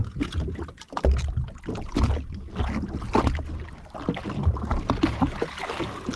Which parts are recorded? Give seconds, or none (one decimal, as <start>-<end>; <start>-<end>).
0.6-6.2